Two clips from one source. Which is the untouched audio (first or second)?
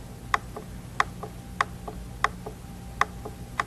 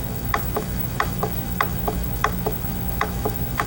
first